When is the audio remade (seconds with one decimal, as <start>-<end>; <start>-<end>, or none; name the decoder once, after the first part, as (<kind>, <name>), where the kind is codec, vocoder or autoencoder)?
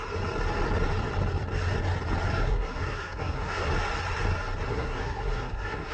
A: 2.3-3.7 (codec, SNAC); 4.7-5.9